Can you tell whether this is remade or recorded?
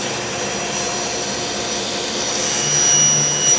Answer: recorded